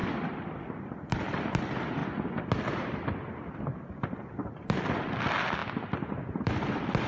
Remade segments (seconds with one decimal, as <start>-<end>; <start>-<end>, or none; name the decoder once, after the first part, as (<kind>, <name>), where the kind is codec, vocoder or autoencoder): 0.0-2.0 (vocoder, BigVGAN v2); 3.5-5.6; 6.4-7.1